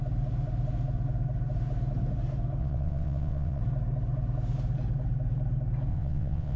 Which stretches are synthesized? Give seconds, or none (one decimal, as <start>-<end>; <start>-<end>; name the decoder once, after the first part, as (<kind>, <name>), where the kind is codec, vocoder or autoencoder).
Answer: 2.6-3.6 (vocoder, WaveNeXt); 5.9-6.6